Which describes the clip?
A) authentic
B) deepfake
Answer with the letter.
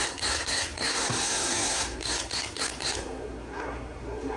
B